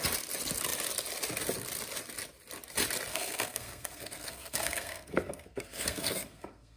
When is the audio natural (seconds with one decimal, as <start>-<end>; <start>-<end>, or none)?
0.0-3.1